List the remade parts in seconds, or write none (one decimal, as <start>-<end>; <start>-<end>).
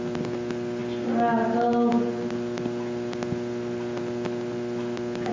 none